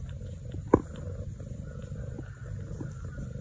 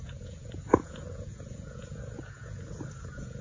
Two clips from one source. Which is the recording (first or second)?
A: first